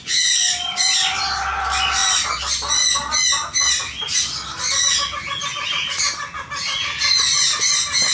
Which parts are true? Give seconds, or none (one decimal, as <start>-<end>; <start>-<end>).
0.0-8.1